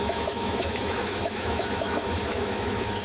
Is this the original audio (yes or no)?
no